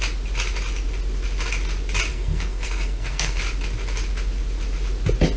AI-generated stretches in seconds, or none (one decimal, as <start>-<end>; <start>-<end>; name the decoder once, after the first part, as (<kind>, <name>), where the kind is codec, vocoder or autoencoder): 2.1-3.4 (codec, SNAC)